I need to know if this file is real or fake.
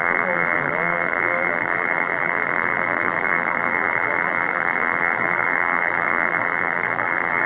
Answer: fake